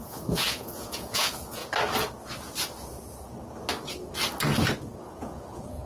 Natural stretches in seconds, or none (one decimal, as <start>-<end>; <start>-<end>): 1.6-5.1